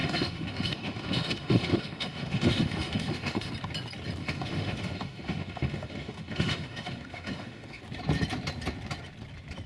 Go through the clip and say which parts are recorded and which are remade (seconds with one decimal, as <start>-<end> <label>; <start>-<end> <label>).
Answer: 0.0-3.5 remade; 3.5-4.2 recorded; 4.2-7.8 remade; 7.8-9.7 recorded